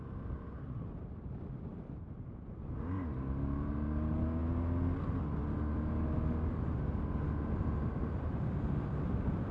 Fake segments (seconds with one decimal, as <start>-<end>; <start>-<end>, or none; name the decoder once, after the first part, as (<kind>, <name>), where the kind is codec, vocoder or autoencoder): none